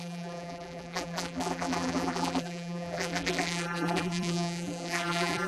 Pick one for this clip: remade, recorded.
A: remade